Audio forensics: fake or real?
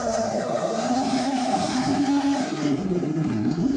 fake